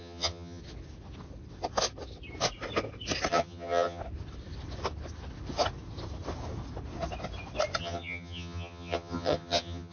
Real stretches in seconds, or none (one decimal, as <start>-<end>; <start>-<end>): 0.6-3.3; 4.0-7.8